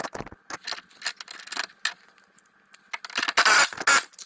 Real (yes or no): yes